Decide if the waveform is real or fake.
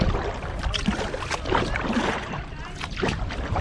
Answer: fake